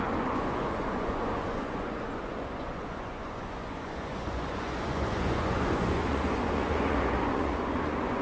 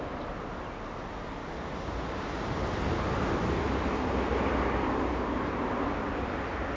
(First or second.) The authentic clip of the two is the second